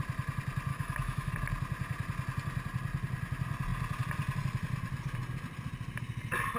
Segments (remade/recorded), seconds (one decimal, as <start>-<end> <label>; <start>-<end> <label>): 0.0-0.7 recorded; 0.7-1.3 remade; 1.3-6.6 recorded